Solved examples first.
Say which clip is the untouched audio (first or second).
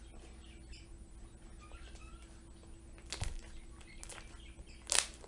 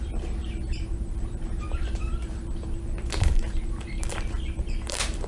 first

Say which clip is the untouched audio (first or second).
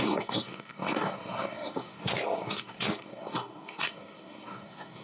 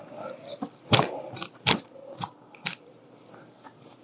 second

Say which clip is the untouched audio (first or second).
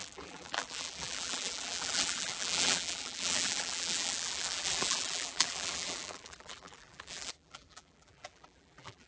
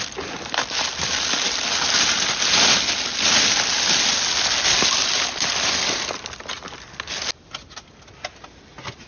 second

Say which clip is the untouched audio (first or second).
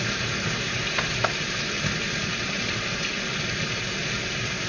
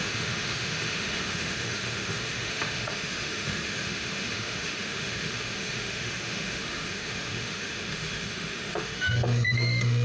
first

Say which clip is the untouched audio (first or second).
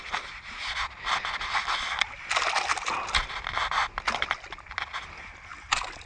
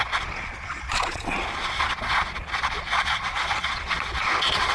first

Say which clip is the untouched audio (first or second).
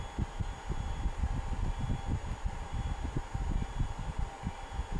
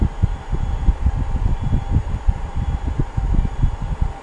first